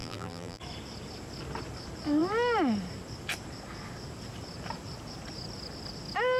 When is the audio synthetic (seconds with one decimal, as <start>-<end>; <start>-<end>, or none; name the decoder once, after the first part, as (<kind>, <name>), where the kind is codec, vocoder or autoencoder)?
0.0-0.6 (vocoder, BigVGAN v2)